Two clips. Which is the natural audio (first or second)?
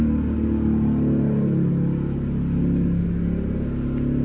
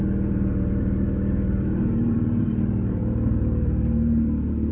first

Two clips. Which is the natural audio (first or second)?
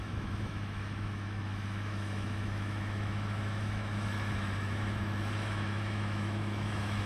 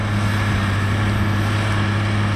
second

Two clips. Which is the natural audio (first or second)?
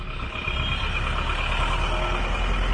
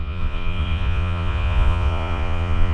first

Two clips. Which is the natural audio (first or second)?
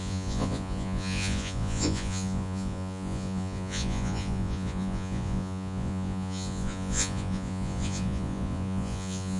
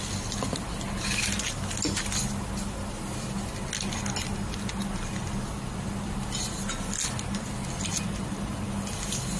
second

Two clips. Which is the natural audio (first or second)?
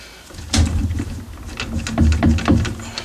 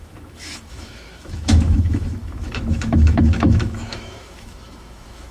first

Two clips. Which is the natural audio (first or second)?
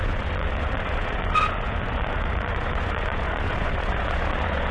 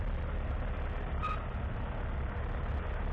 second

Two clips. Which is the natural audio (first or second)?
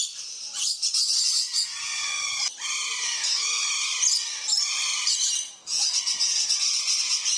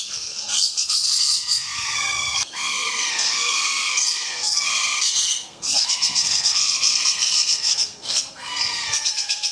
first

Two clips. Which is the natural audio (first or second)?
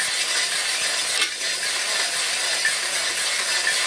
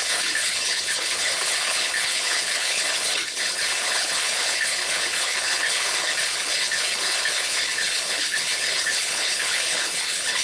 first